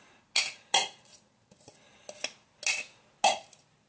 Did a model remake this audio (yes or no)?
no